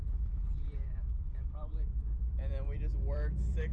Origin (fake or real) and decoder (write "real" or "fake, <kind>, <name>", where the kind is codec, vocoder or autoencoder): fake, vocoder, BigVGAN v2